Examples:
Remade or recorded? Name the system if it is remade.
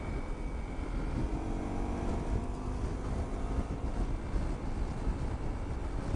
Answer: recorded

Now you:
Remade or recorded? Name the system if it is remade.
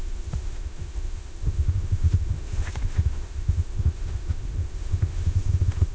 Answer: remade, autoencoder, DAC-VAE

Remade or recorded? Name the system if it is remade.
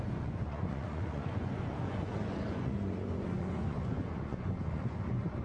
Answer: remade, vocoder, Vocos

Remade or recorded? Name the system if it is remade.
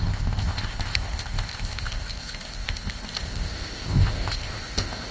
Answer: remade, codec, ZipCodec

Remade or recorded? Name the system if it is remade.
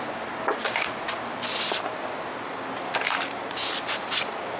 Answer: recorded